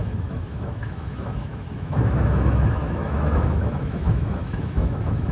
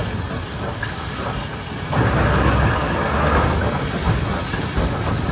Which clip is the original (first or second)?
second